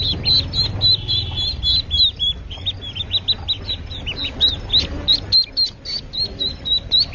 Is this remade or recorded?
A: recorded